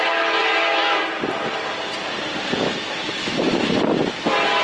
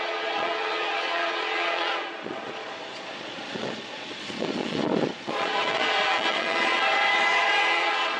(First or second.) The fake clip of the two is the second